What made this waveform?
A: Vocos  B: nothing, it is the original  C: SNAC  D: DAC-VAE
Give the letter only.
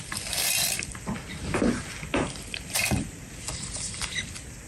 B